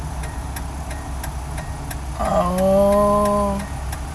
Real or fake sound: real